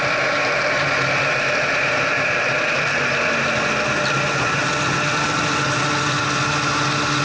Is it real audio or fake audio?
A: real